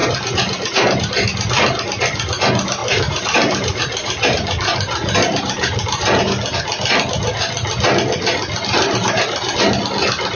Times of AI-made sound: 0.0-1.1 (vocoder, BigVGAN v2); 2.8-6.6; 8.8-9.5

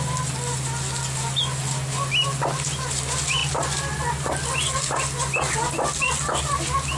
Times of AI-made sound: none

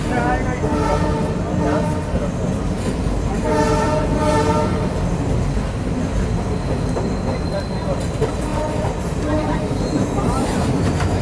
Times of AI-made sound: 8.5-11.2 (vocoder, BigVGAN v2)

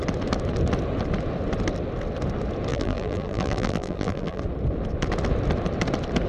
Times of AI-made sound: 2.7-4.4 (vocoder, BigVGAN v2)

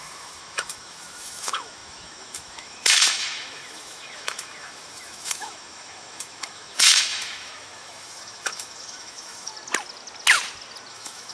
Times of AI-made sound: 0.0-9.5 (autoencoder, DAC-VAE); 10.9-11.3

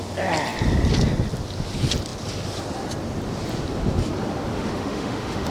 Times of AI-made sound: 4.5-5.5 (autoencoder, DAC-VAE)

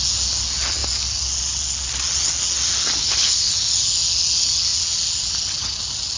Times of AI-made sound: 3.0-3.5 (codec, HILCodec)